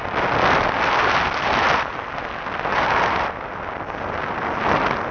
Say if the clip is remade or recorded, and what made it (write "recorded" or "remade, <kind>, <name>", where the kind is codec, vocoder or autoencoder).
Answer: recorded